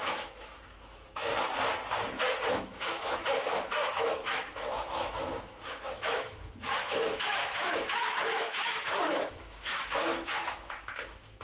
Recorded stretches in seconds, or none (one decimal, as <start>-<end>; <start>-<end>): 1.3-2.5